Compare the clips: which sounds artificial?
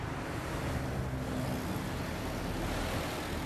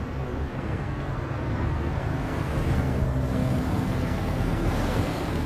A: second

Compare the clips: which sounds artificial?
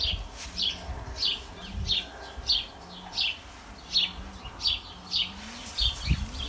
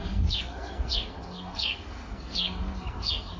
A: second